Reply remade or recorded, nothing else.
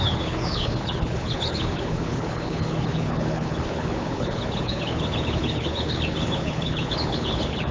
remade